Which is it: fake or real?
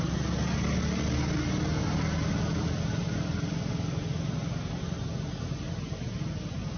real